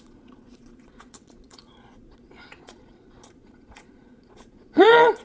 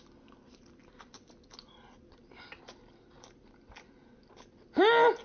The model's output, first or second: first